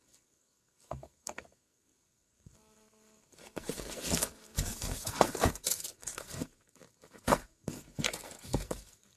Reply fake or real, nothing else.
fake